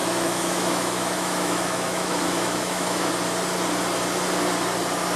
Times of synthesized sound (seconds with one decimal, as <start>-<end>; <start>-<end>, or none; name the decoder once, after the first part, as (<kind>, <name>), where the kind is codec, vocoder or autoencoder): 0.0-3.1 (autoencoder, DAC-VAE)